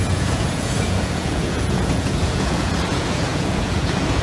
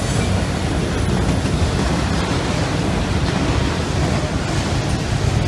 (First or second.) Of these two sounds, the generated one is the first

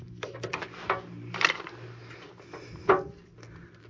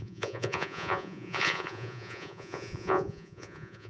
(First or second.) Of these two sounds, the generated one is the second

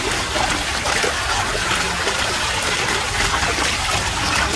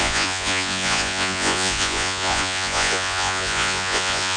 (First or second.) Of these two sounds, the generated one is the second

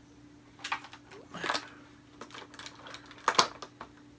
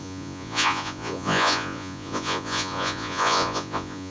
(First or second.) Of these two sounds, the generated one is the second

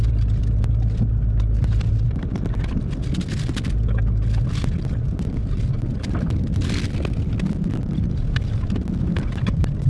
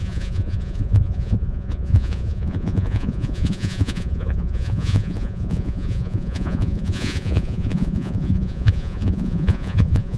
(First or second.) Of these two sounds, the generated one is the second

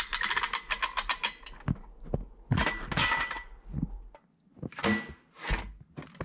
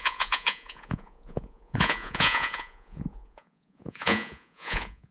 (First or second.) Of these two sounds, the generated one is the second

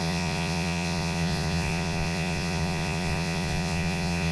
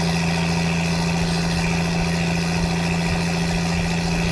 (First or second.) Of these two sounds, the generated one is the first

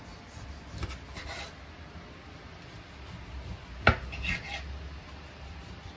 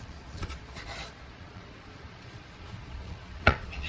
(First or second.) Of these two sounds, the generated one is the second